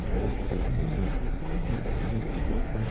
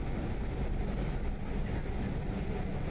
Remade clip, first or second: first